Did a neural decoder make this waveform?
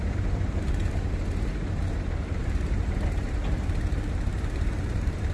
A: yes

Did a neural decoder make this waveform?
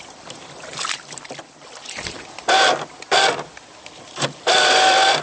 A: yes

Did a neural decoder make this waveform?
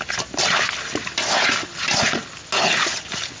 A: no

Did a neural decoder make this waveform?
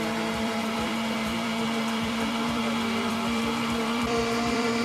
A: yes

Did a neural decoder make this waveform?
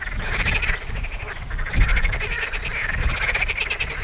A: no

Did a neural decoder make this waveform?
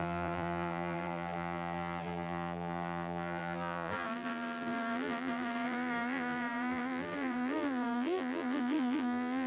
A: yes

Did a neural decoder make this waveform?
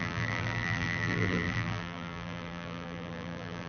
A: yes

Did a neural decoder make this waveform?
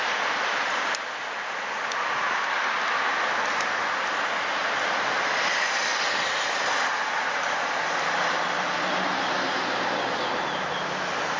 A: no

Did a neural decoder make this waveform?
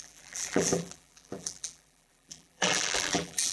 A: yes